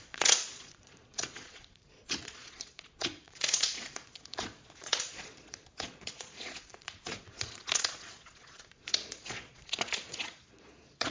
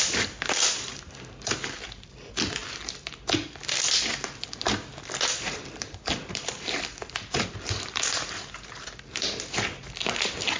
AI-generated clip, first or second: first